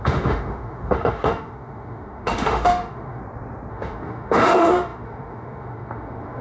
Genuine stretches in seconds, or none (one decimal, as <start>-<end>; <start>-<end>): 3.2-3.7